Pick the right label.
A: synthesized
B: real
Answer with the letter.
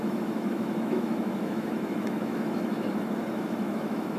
A